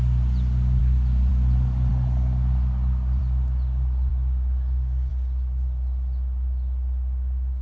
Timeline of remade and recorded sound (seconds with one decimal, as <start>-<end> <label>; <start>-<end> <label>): 0.0-7.6 recorded